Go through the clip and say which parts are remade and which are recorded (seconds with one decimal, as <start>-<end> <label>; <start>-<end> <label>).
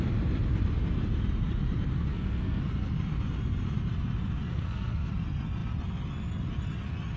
0.0-2.1 recorded; 2.1-2.6 remade; 2.6-4.5 recorded; 4.5-5.1 remade; 5.1-7.2 recorded